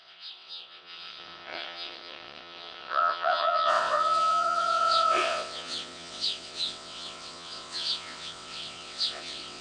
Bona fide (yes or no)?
no